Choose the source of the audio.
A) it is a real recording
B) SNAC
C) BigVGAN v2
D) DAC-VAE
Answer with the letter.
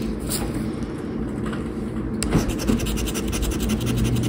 A